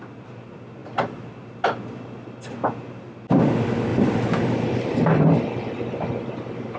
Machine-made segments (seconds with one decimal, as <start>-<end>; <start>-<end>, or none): 3.9-5.2